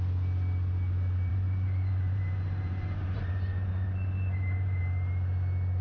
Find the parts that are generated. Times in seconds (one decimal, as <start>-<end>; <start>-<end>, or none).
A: 1.3-4.8